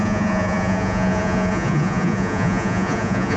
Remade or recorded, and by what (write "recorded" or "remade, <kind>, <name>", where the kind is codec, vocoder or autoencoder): remade, vocoder, Vocos